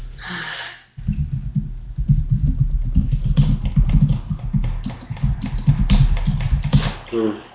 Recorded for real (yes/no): yes